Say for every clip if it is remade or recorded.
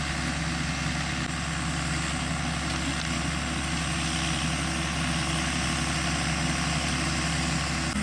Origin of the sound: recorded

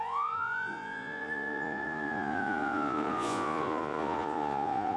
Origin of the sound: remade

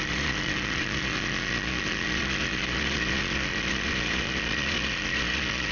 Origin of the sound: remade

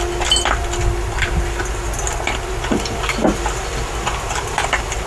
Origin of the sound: recorded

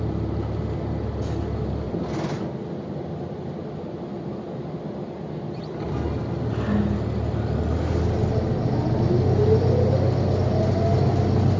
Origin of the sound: recorded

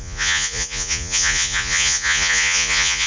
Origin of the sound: remade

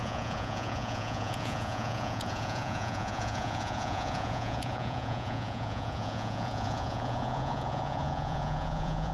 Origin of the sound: remade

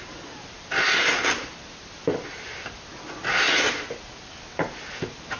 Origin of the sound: recorded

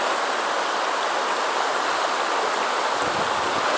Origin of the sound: recorded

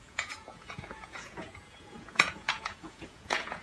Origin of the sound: remade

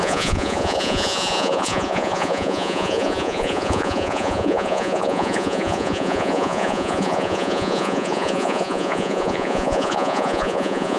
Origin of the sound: remade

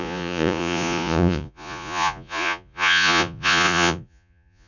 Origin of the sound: remade